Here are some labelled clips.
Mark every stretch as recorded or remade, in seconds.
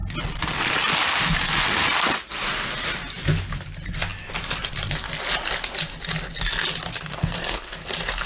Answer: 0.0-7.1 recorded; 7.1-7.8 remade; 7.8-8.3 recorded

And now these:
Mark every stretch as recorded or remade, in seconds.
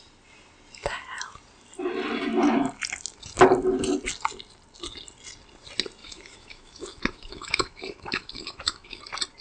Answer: 0.0-6.0 recorded; 6.0-9.0 remade; 9.0-9.4 recorded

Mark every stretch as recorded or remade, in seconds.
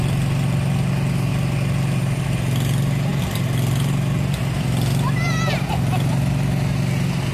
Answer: 0.0-7.3 recorded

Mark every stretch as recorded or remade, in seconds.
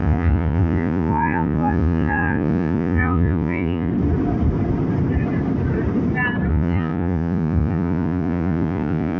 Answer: 0.0-3.9 remade; 3.9-6.5 recorded; 6.5-9.2 remade